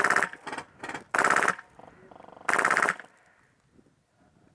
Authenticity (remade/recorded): recorded